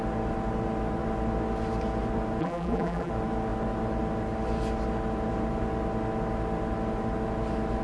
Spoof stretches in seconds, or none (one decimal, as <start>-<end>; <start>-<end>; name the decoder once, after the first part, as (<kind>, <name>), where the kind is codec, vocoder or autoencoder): 2.4-3.1 (vocoder, BigVGAN v2)